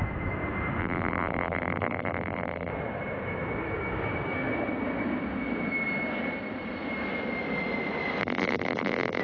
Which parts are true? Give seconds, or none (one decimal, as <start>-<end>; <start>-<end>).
0.0-0.8; 2.7-8.2